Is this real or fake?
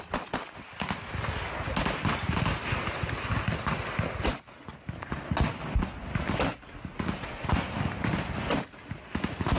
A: real